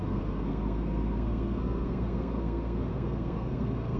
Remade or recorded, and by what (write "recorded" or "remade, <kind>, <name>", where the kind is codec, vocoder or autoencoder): remade, codec, SNAC